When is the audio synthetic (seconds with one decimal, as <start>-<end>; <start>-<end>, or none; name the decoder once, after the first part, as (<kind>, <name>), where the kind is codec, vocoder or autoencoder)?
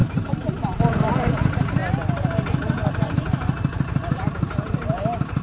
0.0-1.3 (vocoder, BigVGAN v2); 2.8-5.4